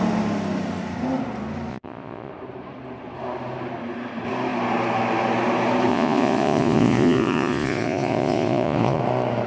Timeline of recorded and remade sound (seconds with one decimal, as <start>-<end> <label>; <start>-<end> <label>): 0.0-1.7 recorded; 1.7-2.3 remade; 2.3-5.9 recorded; 5.9-9.0 remade; 9.0-9.5 recorded